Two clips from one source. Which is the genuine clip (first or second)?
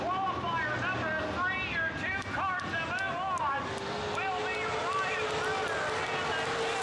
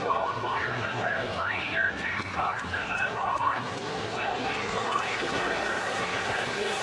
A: first